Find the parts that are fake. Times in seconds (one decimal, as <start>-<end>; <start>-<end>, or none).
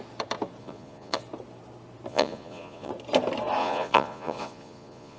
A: 0.6-1.2; 2.1-2.9; 3.6-5.2